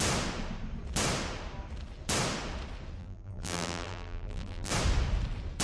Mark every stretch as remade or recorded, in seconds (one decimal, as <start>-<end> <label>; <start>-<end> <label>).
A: 0.0-3.0 recorded; 3.0-4.7 remade; 4.7-5.6 recorded